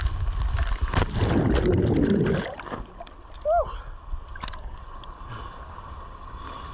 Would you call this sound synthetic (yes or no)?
no